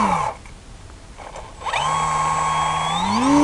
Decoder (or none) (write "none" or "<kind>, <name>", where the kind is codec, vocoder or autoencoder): none